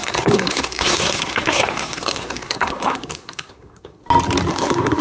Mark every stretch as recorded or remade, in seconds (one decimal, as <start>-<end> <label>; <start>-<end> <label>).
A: 0.0-4.0 remade; 4.0-4.5 recorded; 4.5-5.0 remade